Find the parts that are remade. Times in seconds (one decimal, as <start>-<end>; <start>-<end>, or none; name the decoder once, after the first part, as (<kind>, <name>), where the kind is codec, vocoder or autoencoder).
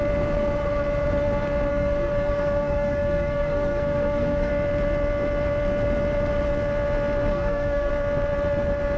1.7-4.5 (codec, SNAC); 7.3-7.9